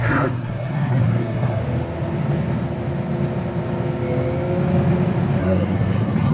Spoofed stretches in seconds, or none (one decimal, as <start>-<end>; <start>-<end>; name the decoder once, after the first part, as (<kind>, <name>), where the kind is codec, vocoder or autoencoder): 0.0-1.6 (codec, SNAC); 5.4-6.3